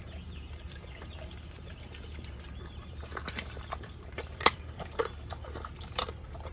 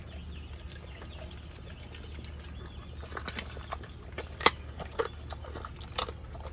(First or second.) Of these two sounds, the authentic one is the second